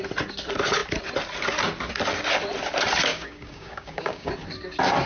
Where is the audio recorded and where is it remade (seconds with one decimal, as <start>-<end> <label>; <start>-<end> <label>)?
0.0-3.1 recorded; 3.1-4.3 remade; 4.3-5.1 recorded